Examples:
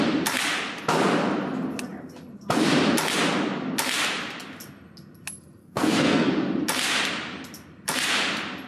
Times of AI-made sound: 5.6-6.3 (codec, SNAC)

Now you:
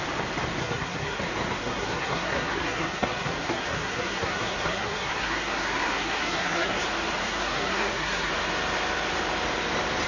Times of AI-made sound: 0.6-1.2 (codec, SNAC); 1.6-6.8; 7.2-8.3

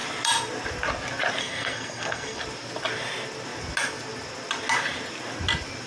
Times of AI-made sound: 1.4-2.4 (codec, SNAC)

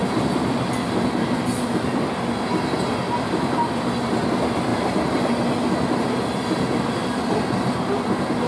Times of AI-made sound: none

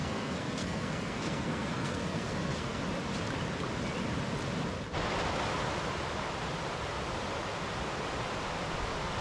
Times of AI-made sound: 0.0-2.8 (codec, SNAC)

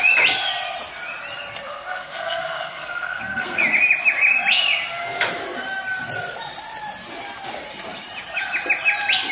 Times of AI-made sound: 1.7-3.6 (codec, SNAC)

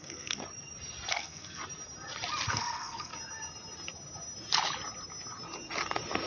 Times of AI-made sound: 0.0-0.4 (codec, SNAC); 1.1-1.6; 2.5-3.1

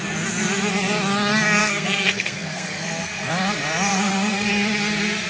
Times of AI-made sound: 1.6-3.3 (codec, SNAC); 3.9-4.5